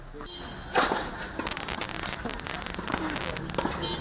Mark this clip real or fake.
real